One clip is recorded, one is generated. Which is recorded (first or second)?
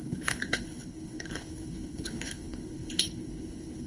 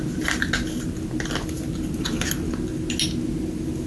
second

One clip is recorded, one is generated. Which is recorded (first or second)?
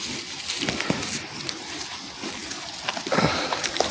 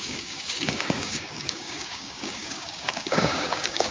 first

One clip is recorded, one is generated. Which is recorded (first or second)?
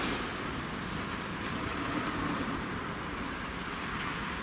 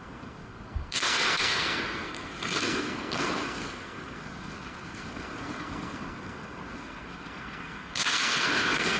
first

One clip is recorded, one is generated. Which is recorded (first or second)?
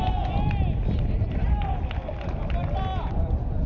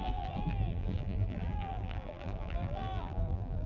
first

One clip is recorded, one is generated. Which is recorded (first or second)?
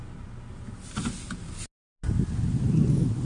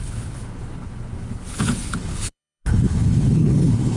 first